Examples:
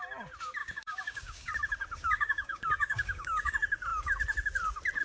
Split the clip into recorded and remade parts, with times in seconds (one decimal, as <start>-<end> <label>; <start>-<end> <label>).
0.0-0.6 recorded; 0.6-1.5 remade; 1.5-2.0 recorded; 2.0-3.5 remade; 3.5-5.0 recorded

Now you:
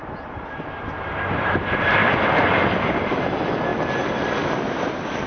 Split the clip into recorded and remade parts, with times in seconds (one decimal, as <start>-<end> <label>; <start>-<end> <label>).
0.0-0.6 recorded; 0.6-3.7 remade; 3.7-5.3 recorded

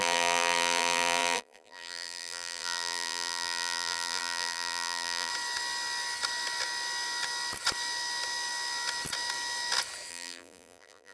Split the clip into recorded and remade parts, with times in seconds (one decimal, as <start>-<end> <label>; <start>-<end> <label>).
0.0-5.3 remade; 5.3-10.1 recorded; 10.1-11.1 remade

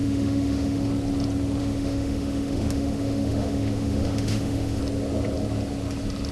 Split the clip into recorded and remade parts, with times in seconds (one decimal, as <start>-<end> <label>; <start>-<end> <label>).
0.0-0.9 remade; 0.9-1.6 recorded; 1.6-4.8 remade; 4.8-6.3 recorded

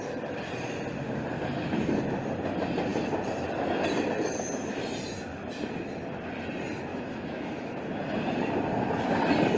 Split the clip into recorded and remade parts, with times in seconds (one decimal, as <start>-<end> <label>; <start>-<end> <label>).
0.0-6.9 recorded; 6.9-7.8 remade; 7.8-9.6 recorded